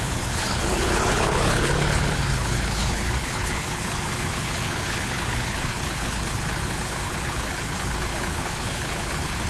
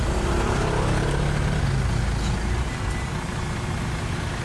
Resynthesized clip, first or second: first